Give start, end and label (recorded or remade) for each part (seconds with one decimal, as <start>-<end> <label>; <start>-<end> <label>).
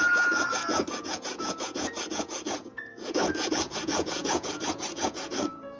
0.0-5.8 remade